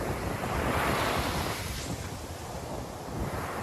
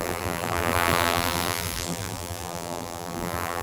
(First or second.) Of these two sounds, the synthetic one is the second